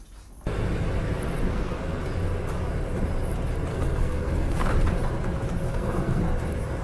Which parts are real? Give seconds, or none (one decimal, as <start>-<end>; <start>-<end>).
0.0-1.5; 2.0-3.7; 4.7-5.6; 6.2-6.8